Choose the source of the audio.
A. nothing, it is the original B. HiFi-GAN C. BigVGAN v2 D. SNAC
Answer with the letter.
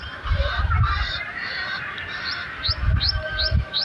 C